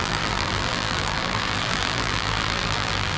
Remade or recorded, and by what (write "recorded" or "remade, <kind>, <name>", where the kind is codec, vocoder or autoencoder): remade, vocoder, BigVGAN v2